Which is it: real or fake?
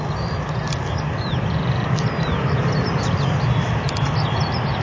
real